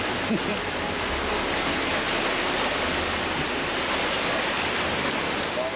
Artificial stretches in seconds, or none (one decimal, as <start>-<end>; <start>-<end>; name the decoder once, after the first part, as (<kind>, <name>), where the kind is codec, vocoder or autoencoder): none